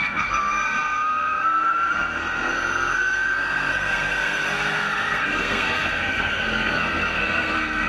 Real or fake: fake